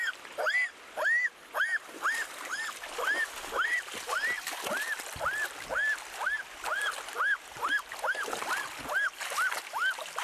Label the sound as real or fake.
real